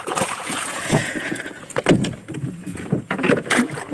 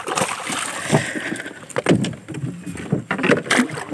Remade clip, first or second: first